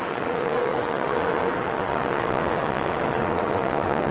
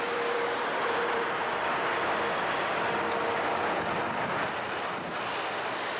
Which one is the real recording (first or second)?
second